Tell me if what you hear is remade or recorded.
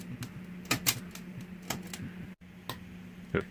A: recorded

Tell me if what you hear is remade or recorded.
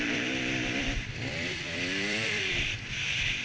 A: remade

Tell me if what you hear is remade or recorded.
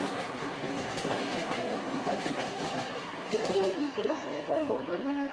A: remade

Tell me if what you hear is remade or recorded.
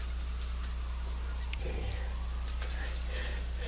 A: recorded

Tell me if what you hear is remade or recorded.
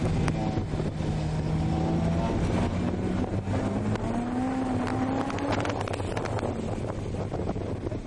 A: recorded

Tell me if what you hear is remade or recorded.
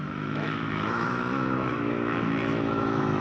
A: remade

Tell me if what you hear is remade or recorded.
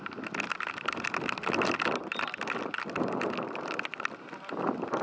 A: recorded